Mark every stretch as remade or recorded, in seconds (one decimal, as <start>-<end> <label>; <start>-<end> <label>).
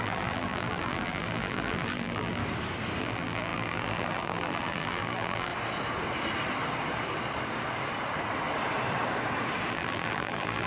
0.0-2.4 remade; 2.4-3.0 recorded; 3.0-5.5 remade; 5.5-9.7 recorded; 9.7-10.7 remade